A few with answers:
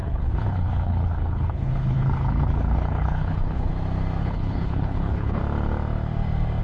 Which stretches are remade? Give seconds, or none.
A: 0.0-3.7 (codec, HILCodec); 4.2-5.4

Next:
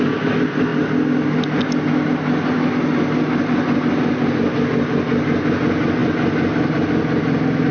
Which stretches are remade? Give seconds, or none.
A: none

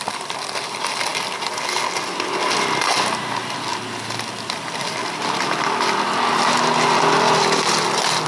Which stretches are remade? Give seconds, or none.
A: none

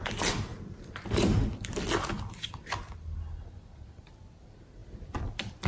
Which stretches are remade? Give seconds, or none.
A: none

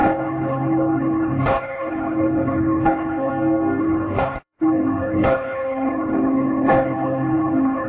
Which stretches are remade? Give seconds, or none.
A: 0.0-3.3 (codec, HILCodec); 3.8-7.9

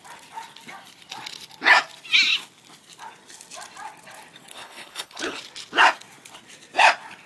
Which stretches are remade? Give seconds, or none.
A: 4.5-5.4 (codec, HILCodec)

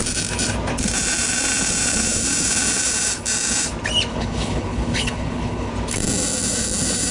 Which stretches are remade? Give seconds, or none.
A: 4.1-5.7 (codec, HILCodec)

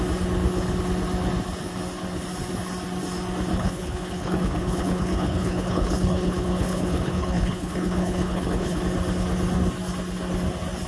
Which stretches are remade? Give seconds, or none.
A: 3.5-8.8 (codec, HILCodec)